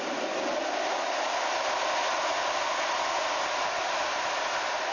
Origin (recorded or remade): recorded